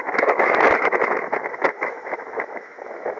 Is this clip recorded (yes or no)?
no